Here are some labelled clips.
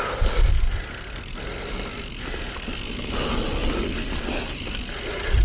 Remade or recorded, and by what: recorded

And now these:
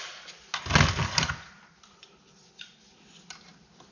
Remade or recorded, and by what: recorded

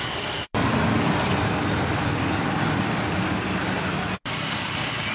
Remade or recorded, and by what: recorded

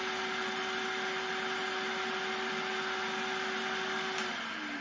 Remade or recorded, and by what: recorded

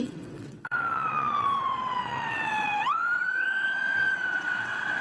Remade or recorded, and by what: remade, vocoder, WaveNeXt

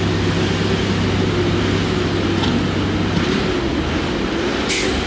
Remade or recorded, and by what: recorded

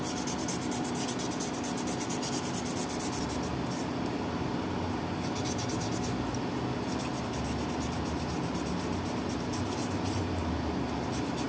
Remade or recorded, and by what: recorded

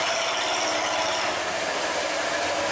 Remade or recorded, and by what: recorded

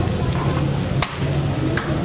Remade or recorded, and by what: recorded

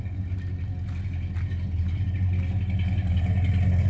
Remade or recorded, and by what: recorded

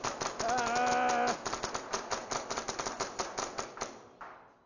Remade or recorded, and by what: recorded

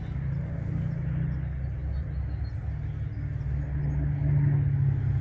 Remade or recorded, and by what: recorded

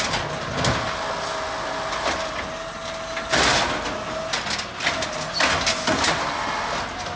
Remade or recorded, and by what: recorded